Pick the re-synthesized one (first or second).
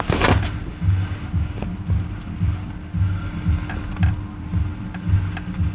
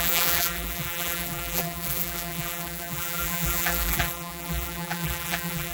second